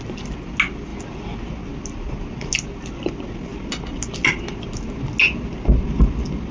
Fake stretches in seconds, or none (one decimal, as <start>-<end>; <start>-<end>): none